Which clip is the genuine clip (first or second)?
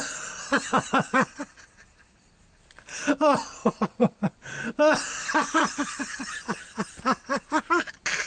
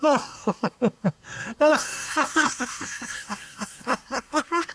first